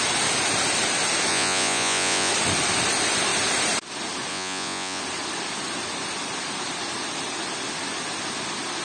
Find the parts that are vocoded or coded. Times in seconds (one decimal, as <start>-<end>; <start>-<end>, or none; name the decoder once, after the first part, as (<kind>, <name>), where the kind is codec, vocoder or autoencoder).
1.3-2.3 (vocoder, Vocos); 4.3-5.0